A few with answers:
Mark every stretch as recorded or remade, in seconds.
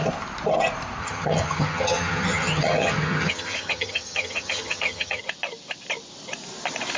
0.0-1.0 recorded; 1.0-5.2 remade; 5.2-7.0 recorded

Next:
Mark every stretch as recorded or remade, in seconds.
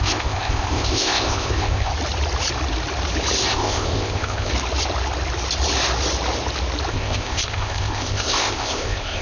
0.0-1.9 remade; 1.9-3.5 recorded; 3.5-4.5 remade; 4.5-6.9 recorded; 6.9-9.2 remade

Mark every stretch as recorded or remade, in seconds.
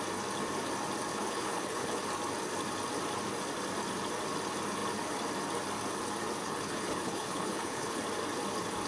0.0-1.1 recorded; 1.1-2.0 remade; 2.0-6.4 recorded; 6.4-8.0 remade; 8.0-8.9 recorded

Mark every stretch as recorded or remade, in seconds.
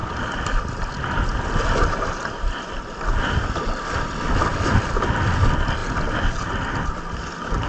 0.0-7.7 recorded